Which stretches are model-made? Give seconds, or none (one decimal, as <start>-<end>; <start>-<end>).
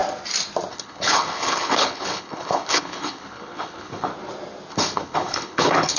0.7-4.1; 4.7-6.0